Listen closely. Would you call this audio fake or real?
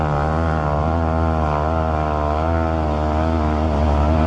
real